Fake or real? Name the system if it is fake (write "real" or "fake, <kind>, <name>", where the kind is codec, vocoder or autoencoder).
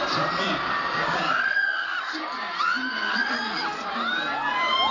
fake, vocoder, BigVGAN v2